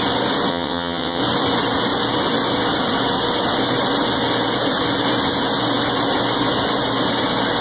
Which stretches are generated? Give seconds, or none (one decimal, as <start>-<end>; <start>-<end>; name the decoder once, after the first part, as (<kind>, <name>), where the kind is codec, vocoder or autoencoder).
0.5-1.2 (vocoder, WaveNeXt)